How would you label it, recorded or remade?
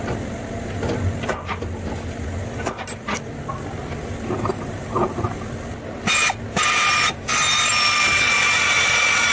remade